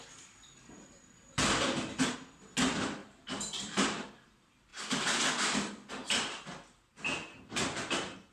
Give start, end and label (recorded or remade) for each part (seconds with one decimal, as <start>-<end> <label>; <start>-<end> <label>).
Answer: 0.0-3.0 recorded; 3.0-4.1 remade; 4.1-4.7 recorded; 4.7-5.2 remade; 5.2-8.3 recorded